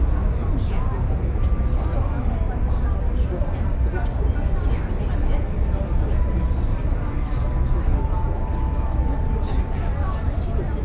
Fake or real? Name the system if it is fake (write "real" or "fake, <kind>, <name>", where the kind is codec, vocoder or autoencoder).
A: real